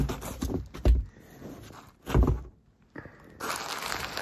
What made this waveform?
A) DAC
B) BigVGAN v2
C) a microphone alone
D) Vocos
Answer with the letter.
C